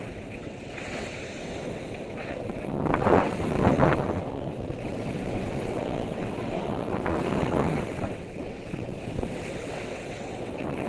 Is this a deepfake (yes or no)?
yes